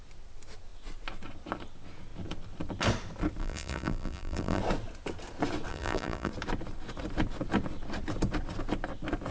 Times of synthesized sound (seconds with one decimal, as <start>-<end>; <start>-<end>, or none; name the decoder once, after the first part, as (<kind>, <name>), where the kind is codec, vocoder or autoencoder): 3.4-4.6 (vocoder, BigVGAN v2); 5.7-6.3